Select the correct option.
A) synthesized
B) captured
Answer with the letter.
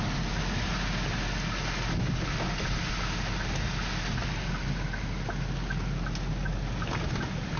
B